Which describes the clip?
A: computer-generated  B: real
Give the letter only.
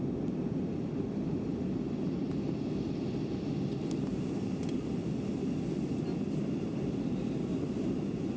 B